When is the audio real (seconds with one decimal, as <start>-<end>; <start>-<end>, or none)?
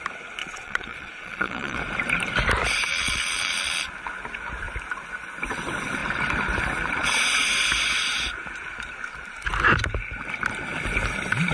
0.0-0.4; 1.8-2.9; 3.9-11.5